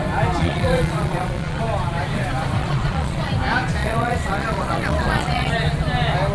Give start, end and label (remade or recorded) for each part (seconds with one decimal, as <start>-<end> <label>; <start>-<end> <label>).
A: 0.0-0.4 recorded; 0.4-1.6 remade; 1.6-2.6 recorded; 2.6-3.3 remade; 3.3-3.8 recorded; 3.8-5.5 remade; 5.5-6.3 recorded